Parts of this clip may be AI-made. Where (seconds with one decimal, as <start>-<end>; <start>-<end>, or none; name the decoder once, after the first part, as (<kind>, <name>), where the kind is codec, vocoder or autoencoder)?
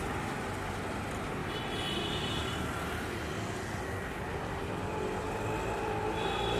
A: none